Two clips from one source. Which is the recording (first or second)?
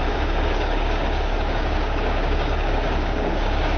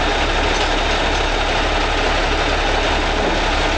second